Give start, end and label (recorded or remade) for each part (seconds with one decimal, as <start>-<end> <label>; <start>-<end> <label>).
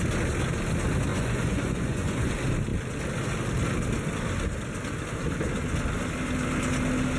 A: 0.0-1.1 recorded; 1.1-2.3 remade; 2.3-7.2 recorded